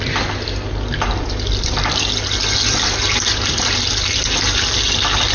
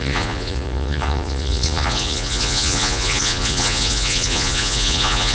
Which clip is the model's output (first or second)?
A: second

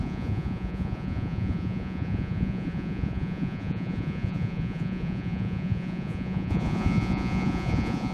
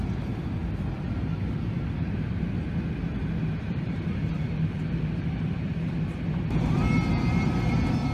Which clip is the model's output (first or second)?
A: first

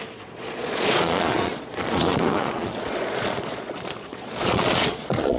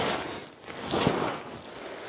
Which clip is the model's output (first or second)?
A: first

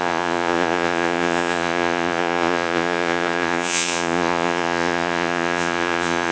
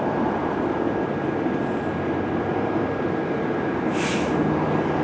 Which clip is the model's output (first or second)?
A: first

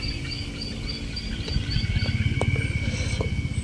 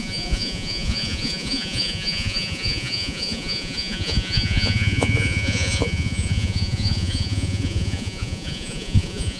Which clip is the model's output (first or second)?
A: second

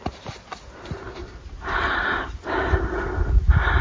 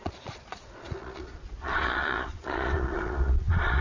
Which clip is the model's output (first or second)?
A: second